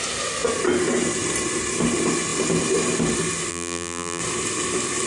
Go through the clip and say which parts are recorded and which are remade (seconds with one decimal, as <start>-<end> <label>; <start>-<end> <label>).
0.0-3.5 recorded; 3.5-4.2 remade; 4.2-5.1 recorded